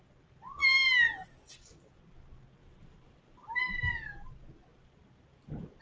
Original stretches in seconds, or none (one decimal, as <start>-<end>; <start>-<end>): 0.0-2.6; 3.6-4.7